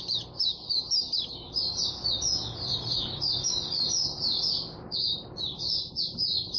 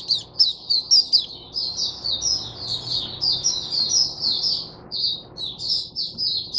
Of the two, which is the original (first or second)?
second